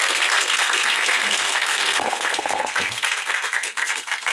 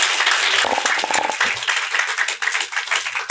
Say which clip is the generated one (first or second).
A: first